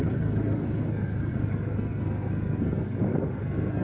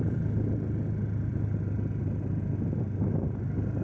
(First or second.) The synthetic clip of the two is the first